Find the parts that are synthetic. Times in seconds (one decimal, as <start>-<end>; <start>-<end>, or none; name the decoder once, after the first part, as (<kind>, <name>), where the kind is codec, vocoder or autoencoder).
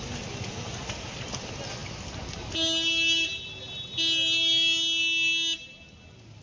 none